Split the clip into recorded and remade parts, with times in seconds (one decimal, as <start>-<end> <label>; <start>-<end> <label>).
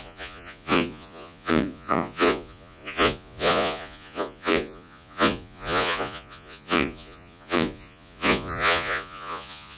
0.0-9.8 remade